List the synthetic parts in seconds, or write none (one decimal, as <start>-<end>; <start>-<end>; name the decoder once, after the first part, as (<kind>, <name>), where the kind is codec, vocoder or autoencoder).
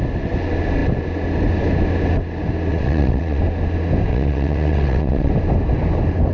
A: 2.7-3.4 (vocoder, WaveNeXt); 4.1-5.3